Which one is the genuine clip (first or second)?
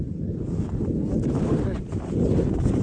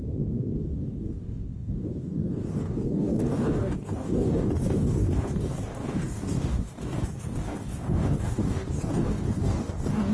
first